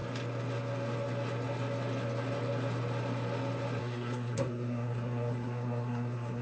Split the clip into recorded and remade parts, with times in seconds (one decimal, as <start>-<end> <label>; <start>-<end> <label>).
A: 0.0-3.8 recorded; 3.8-6.4 remade